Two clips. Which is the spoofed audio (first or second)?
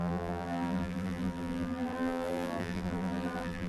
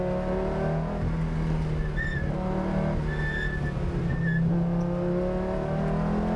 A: first